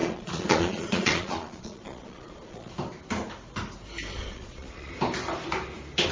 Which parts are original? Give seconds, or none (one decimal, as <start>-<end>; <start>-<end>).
2.7-4.1; 4.9-6.1